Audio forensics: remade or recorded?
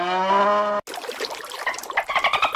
recorded